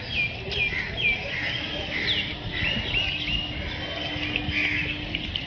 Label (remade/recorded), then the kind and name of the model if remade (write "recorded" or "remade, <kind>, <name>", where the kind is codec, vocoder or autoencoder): recorded